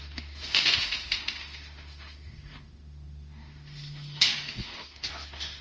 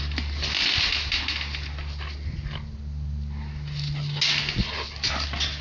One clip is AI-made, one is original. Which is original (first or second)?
second